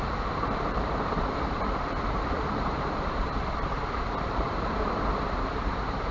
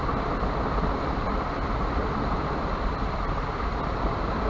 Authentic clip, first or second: second